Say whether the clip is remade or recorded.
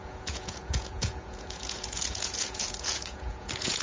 remade